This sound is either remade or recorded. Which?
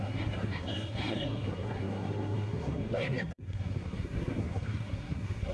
remade